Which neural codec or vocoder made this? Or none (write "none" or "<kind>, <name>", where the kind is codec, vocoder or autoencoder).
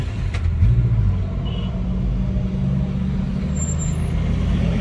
none